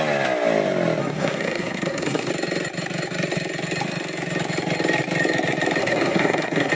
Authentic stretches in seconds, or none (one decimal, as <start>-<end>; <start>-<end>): 0.0-1.0; 2.3-5.8